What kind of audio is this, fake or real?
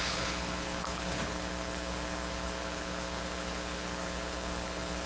fake